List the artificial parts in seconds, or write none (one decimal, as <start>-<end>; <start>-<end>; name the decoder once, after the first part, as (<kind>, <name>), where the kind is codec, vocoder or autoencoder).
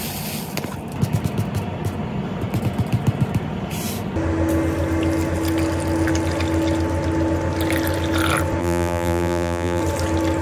8.6-9.8 (vocoder, BigVGAN v2)